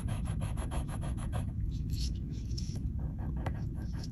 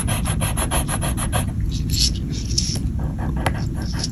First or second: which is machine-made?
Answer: first